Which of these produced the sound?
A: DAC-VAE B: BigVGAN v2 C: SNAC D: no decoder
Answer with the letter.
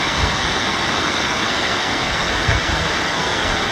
C